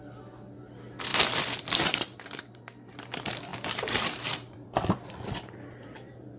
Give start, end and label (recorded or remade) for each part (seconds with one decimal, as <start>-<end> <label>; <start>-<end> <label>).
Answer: 0.0-1.1 recorded; 1.1-2.4 remade; 2.4-3.5 recorded; 3.5-6.4 remade